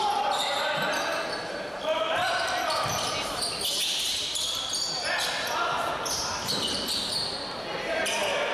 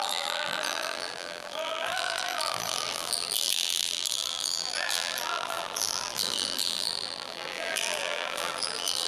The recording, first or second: first